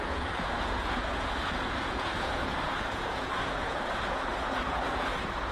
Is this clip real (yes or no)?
no